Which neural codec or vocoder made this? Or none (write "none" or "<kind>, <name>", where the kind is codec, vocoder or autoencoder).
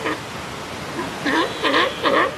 vocoder, BigVGAN v2